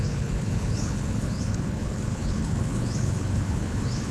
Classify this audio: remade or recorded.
remade